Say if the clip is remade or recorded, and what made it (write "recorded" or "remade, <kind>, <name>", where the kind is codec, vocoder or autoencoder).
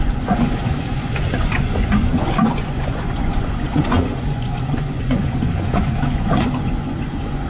remade, vocoder, Vocos